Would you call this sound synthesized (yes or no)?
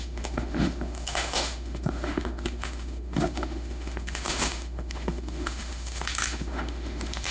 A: yes